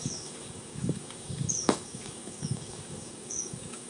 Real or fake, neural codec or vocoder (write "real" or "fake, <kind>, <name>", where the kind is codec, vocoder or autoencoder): fake, codec, DAC